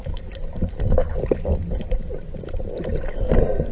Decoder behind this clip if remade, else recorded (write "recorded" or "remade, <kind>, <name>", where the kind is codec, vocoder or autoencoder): recorded